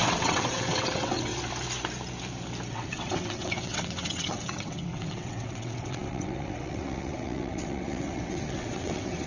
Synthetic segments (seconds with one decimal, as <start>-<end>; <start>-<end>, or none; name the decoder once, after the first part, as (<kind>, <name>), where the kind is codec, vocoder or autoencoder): 0.0-1.3 (vocoder, WaveNeXt); 2.7-9.3